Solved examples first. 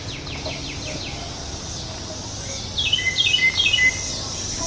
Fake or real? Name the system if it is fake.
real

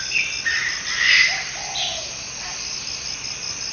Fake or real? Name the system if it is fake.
real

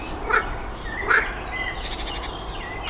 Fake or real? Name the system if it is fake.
real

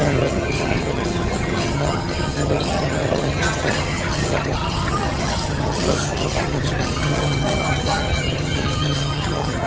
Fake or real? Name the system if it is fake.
fake, vocoder, HiFi-GAN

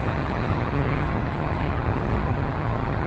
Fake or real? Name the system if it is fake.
fake, vocoder, HiFi-GAN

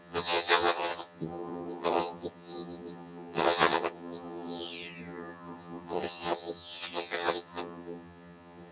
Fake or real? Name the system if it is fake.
fake, vocoder, HiFi-GAN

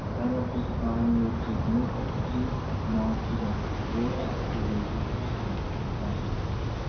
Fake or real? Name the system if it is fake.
real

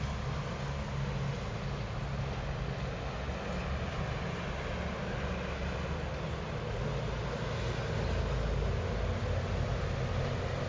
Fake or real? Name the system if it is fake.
real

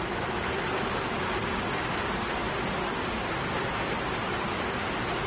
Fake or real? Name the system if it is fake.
real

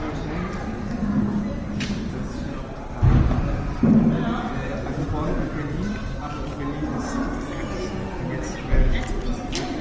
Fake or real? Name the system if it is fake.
real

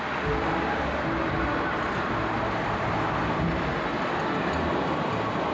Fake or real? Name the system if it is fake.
real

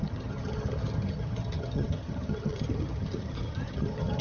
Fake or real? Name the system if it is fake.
fake, vocoder, HiFi-GAN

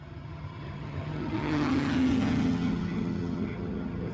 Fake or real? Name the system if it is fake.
fake, vocoder, HiFi-GAN